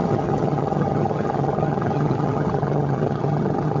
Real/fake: fake